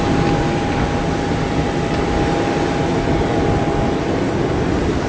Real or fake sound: real